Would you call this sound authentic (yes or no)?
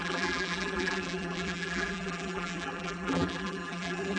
no